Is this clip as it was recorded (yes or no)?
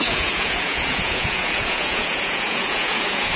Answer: no